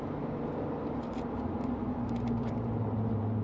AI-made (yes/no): yes